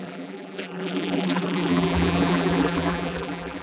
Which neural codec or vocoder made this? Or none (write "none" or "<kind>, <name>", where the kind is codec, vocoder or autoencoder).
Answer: vocoder, BigVGAN v2